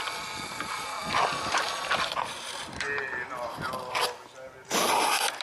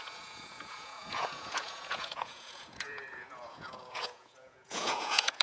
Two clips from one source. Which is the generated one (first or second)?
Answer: second